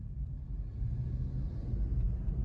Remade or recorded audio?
recorded